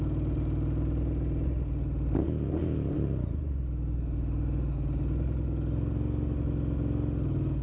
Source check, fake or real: real